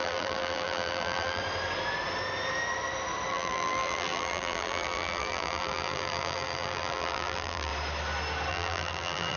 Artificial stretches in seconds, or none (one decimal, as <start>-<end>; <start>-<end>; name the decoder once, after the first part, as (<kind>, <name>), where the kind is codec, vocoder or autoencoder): 0.0-1.4 (vocoder, BigVGAN v2); 3.3-7.7; 8.5-9.4